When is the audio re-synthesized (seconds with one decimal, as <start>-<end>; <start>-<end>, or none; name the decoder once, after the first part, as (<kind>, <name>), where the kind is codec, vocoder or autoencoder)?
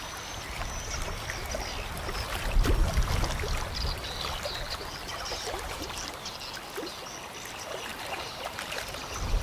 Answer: 5.0-5.9 (vocoder, BigVGAN v2); 7.9-9.0